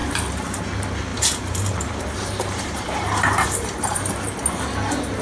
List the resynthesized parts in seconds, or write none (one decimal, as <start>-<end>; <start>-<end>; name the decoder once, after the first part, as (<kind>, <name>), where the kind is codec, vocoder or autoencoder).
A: 0.0-0.6 (vocoder, BigVGAN v2); 1.1-4.2